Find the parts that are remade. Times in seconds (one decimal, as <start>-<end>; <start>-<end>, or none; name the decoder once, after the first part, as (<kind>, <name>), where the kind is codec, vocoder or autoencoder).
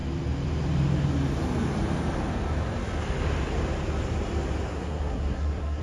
4.7-5.8 (codec, SNAC)